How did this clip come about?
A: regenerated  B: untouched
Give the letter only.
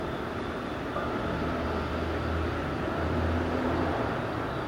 B